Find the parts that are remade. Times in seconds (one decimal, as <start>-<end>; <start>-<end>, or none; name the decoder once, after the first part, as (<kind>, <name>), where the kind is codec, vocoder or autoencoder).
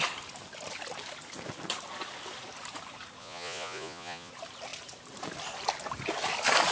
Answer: 3.2-4.3 (vocoder, Vocos)